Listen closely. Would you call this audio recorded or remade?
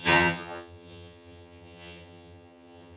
remade